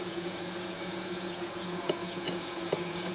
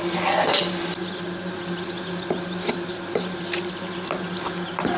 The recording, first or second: second